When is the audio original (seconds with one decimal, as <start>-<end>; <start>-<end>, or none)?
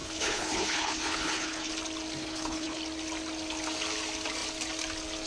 1.7-2.2; 2.8-5.3